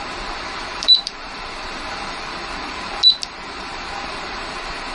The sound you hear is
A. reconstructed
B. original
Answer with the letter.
A